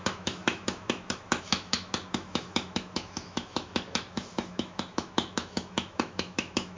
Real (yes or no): no